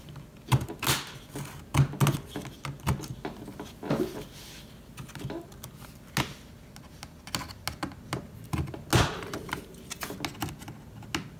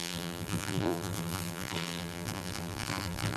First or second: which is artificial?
second